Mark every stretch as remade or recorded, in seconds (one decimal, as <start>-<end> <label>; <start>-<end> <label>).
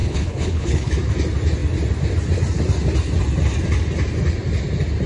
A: 0.0-0.9 remade; 0.9-5.1 recorded